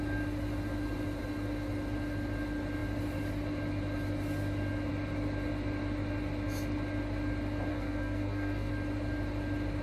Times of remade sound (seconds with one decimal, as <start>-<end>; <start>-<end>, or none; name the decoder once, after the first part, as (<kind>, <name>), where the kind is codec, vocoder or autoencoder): 7.7-8.7 (codec, SNAC)